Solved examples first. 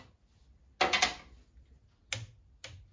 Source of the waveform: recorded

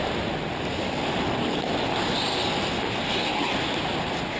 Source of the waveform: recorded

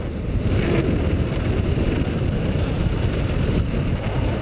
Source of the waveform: recorded